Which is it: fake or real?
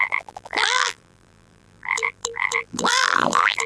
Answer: fake